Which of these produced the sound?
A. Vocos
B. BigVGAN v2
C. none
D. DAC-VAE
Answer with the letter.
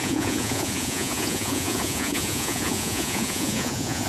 A